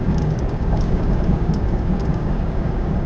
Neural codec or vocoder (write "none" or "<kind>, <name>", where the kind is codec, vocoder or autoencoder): codec, DAC